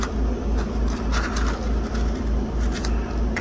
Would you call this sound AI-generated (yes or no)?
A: no